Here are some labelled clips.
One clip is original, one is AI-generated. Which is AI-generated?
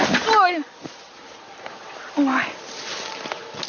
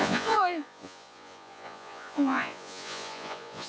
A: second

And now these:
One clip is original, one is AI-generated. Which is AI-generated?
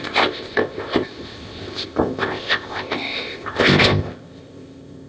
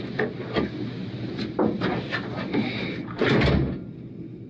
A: first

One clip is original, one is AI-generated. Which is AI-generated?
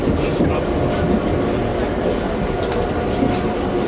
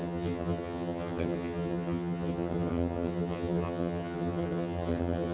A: second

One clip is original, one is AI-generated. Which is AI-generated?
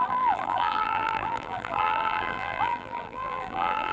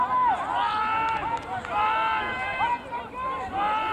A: first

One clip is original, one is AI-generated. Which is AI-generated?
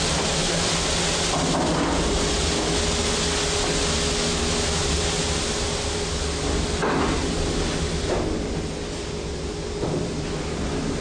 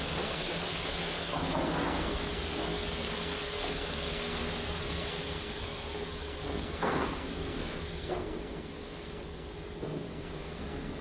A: second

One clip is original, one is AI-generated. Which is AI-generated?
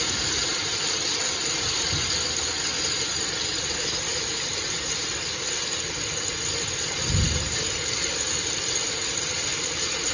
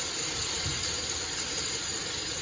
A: second